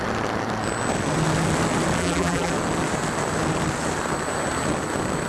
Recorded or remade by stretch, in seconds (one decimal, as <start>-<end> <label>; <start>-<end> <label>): 0.0-2.0 recorded; 2.0-2.5 remade; 2.5-5.3 recorded